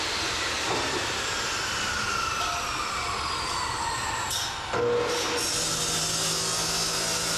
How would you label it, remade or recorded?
recorded